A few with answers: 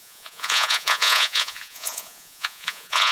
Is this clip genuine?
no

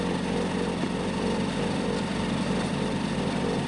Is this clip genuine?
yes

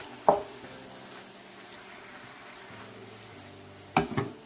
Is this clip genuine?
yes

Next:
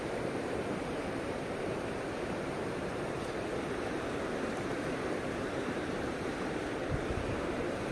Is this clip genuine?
no